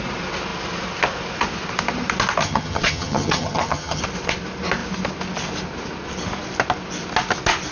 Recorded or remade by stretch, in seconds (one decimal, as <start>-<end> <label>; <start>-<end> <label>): 0.0-2.4 recorded; 2.4-4.0 remade; 4.0-7.7 recorded